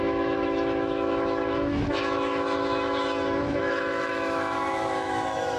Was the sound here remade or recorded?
remade